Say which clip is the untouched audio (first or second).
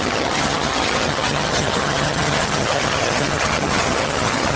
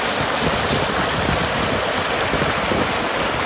second